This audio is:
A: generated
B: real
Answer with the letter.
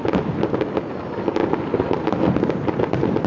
B